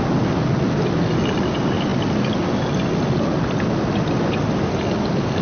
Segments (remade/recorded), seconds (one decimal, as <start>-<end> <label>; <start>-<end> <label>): 0.0-5.4 recorded